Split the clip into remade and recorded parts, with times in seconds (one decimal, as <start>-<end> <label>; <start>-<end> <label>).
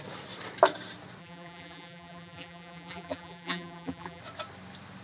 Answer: 0.0-1.2 recorded; 1.2-4.2 remade; 4.2-5.0 recorded